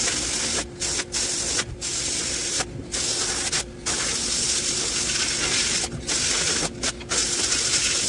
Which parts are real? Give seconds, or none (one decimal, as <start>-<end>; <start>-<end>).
0.0-8.1